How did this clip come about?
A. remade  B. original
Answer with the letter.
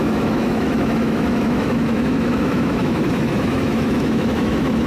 A